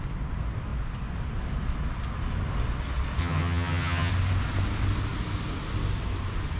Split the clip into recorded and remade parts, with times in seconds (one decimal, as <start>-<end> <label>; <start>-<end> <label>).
0.0-3.2 recorded; 3.2-4.1 remade; 4.1-6.6 recorded